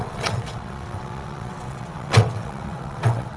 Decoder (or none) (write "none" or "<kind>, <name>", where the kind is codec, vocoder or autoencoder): vocoder, WaveNeXt